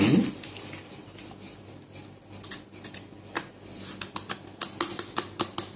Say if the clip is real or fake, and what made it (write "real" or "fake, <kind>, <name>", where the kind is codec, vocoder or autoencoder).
real